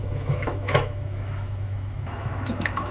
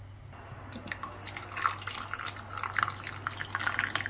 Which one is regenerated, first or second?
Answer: first